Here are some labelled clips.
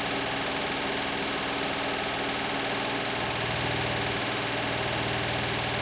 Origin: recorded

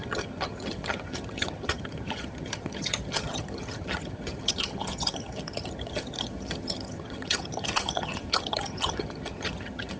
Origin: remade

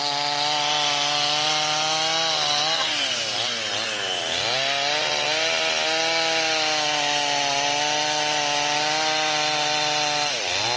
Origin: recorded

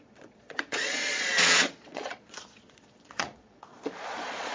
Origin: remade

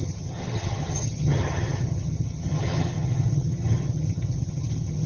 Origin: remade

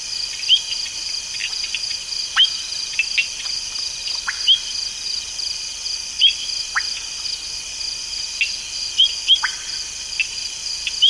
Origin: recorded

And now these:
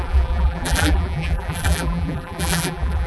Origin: remade